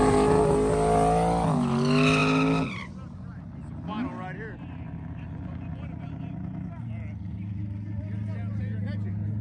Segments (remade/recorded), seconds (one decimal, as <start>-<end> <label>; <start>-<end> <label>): 0.0-9.4 recorded